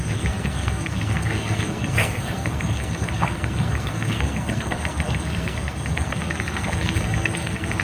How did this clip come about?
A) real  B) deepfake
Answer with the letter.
B